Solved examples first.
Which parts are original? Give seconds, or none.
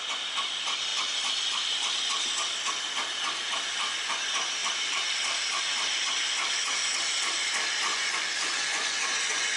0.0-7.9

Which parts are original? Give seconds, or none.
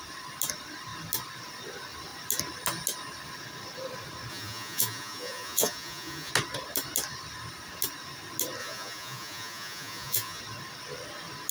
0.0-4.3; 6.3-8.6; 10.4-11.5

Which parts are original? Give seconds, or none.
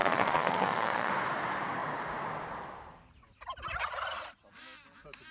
1.1-5.3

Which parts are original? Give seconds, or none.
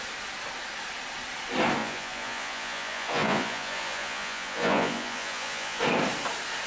0.0-1.8; 5.8-6.7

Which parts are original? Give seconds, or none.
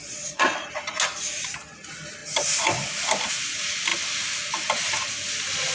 0.5-5.7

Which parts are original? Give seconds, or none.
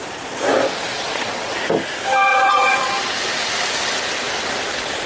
0.0-0.9; 1.5-2.3; 2.9-5.1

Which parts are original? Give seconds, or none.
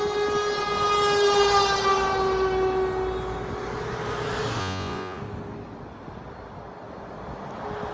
0.0-4.6; 5.2-7.9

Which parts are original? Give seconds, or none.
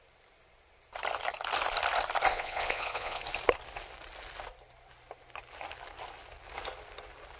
0.0-2.3; 3.2-7.4